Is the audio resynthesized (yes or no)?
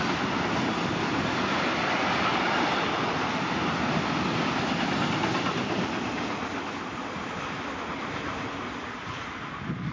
no